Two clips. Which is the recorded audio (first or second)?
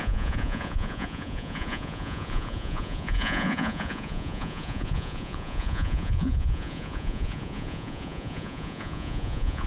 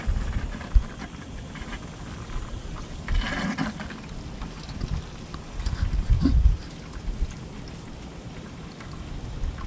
second